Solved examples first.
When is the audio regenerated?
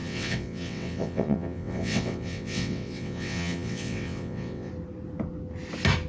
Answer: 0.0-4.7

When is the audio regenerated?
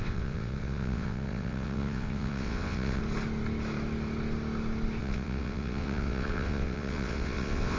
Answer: 0.0-3.0; 5.0-7.8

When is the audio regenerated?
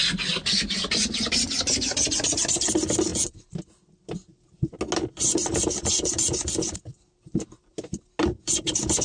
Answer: none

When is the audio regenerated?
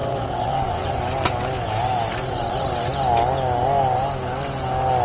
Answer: 0.0-1.0; 2.2-2.9